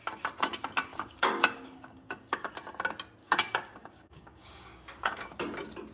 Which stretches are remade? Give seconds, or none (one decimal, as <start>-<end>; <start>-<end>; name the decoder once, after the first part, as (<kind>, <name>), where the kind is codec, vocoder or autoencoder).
0.9-2.5 (codec, DAC); 3.2-5.3